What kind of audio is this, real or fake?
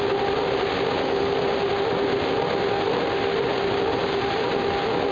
real